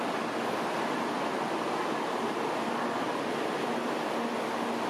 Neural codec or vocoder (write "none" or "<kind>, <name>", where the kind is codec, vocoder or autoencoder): none